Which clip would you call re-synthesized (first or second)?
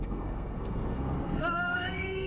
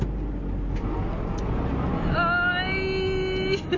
first